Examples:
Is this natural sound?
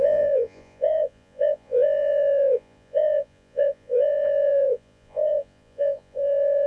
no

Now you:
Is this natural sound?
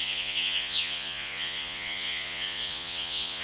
no